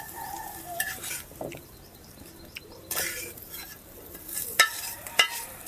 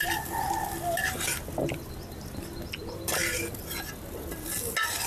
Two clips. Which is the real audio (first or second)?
second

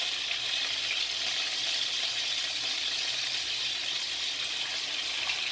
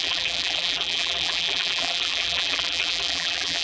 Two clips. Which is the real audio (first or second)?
first